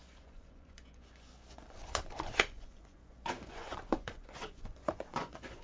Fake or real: fake